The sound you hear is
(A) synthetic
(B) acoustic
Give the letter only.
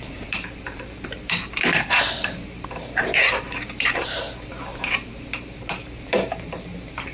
A